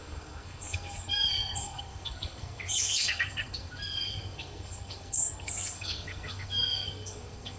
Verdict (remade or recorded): remade